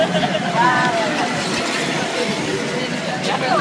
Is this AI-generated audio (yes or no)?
no